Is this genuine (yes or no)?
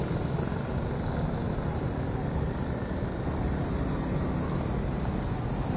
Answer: yes